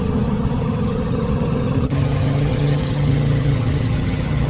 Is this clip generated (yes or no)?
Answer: yes